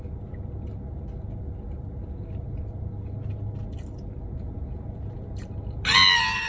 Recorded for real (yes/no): yes